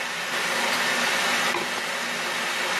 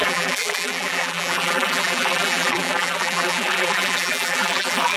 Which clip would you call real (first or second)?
first